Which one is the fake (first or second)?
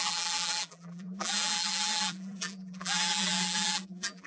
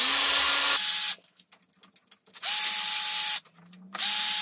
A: first